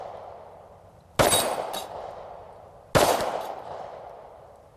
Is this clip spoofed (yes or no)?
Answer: no